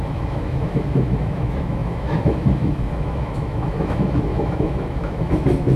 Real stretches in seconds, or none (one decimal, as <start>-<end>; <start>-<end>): none